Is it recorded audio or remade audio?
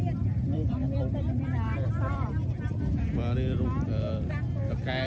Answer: remade